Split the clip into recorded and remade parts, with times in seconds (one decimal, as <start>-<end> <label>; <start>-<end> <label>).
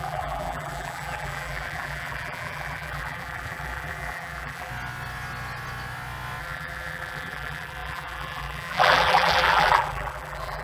0.0-4.7 remade; 4.7-6.4 recorded; 6.4-10.6 remade